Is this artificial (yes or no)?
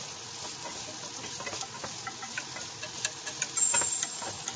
no